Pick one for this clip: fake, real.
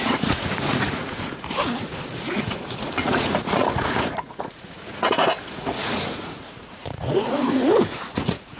fake